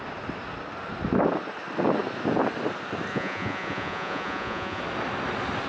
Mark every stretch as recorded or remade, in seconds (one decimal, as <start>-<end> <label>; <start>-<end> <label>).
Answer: 0.0-3.1 recorded; 3.1-4.8 remade; 4.8-5.7 recorded